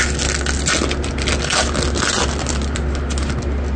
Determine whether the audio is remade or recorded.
recorded